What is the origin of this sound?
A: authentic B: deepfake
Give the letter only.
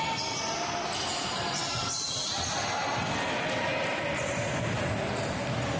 A